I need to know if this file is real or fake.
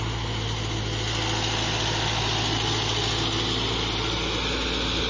real